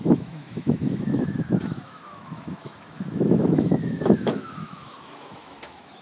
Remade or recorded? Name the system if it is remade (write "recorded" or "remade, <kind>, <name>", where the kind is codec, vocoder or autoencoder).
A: remade, autoencoder, DAC-VAE